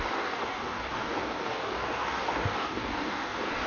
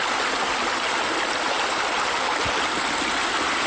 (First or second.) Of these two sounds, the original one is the second